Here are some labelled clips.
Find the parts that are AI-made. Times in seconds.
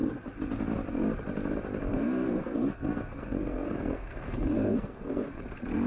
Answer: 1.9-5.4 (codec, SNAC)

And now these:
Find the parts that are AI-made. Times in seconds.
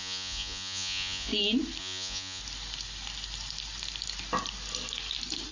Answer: 0.0-1.3 (vocoder, Vocos); 1.8-2.4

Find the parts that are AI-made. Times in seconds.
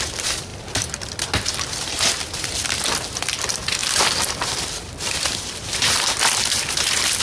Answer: 0.0-0.5 (vocoder, BigVGAN v2); 2.1-7.2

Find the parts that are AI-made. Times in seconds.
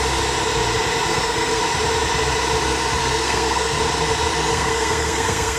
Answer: 1.1-1.6 (codec, SNAC); 3.0-3.8; 4.5-5.6